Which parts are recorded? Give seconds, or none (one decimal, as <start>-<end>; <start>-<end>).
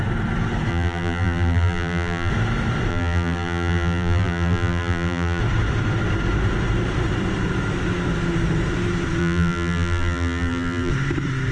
0.0-0.7; 2.3-2.9; 5.4-9.2; 10.9-11.5